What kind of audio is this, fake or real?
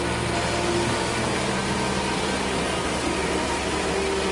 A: real